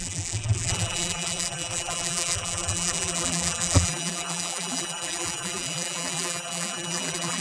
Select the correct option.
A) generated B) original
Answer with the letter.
A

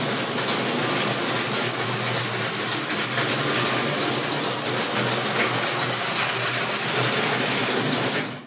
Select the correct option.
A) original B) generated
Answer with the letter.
A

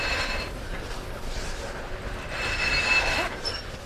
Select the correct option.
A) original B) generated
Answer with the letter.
A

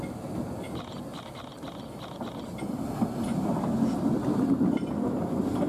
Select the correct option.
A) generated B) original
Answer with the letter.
B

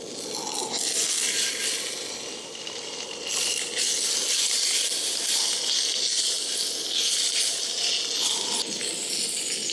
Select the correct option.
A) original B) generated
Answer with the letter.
A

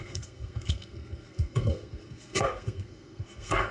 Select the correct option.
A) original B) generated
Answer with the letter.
B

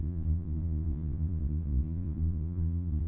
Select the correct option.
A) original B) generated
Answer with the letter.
B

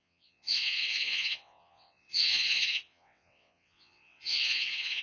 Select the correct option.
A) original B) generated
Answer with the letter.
B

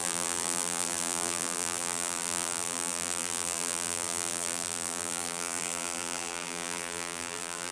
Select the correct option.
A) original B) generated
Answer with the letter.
B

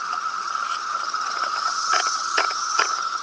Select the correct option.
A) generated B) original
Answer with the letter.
A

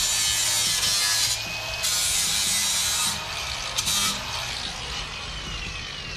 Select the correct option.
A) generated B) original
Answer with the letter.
B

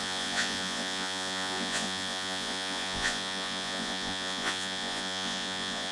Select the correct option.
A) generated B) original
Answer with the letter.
A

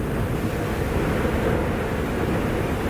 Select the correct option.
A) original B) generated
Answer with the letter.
A